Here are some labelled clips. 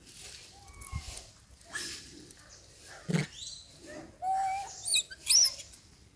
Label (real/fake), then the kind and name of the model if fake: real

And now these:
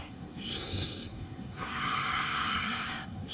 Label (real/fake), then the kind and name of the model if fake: fake, codec, SNAC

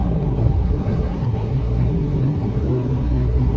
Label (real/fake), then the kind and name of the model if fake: fake, codec, SNAC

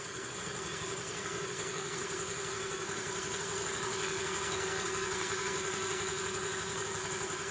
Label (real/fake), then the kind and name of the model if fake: fake, codec, SNAC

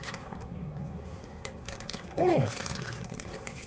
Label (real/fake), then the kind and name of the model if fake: fake, codec, SNAC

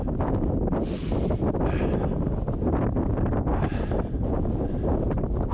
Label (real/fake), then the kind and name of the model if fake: real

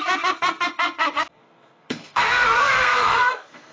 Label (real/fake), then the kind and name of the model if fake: fake, codec, SNAC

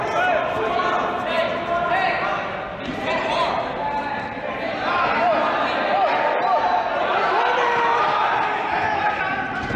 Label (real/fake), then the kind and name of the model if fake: real